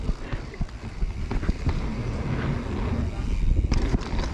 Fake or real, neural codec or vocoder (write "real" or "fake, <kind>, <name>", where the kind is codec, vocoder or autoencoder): real